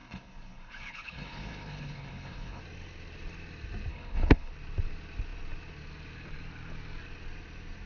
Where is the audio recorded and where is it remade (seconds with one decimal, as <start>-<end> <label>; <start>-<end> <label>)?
0.0-2.6 remade; 2.6-3.9 recorded; 3.9-4.5 remade; 4.5-7.9 recorded